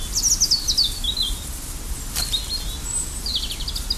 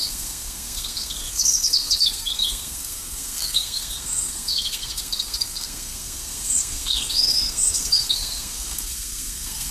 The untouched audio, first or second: first